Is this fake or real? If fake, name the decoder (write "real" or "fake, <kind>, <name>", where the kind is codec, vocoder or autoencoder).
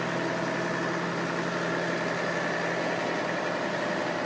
real